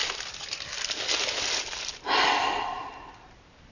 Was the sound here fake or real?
real